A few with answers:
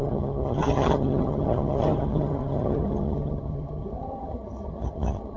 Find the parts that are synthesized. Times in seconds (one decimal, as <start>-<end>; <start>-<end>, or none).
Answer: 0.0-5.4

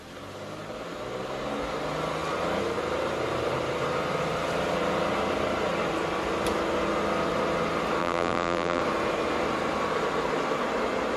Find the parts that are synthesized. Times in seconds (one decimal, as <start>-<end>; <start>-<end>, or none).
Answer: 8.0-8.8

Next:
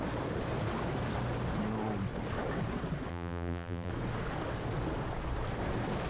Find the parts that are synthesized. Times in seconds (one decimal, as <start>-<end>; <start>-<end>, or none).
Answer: 3.1-3.9

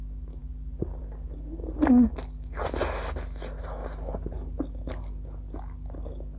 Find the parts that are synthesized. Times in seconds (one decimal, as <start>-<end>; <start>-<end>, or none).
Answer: none